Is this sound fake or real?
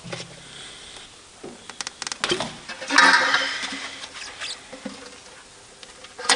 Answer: real